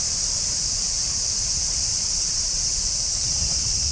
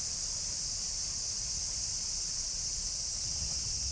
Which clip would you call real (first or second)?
second